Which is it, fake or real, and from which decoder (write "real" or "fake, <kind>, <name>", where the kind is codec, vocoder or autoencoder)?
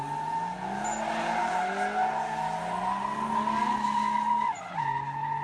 real